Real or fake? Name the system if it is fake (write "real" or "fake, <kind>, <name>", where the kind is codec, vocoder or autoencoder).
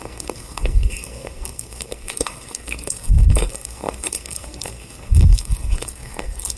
fake, codec, SNAC